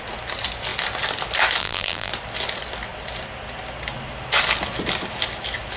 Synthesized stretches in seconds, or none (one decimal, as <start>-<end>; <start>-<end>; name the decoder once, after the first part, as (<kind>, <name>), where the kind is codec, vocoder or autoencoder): 1.6-2.1 (vocoder, BigVGAN v2)